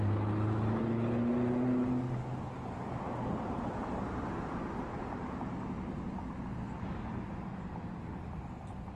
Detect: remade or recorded recorded